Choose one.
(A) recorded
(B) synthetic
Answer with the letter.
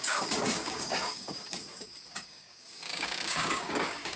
B